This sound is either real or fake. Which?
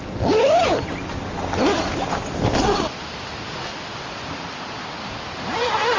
real